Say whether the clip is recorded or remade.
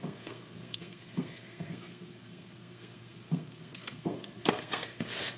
remade